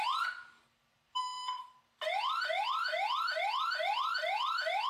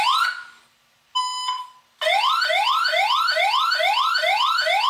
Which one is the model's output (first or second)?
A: first